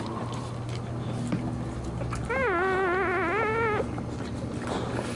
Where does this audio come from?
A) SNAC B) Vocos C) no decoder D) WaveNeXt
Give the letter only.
C